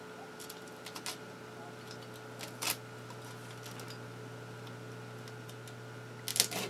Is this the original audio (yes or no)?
yes